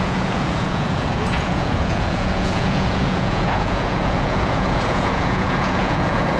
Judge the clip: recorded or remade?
remade